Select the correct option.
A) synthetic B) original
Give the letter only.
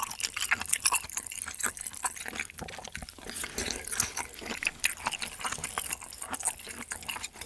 B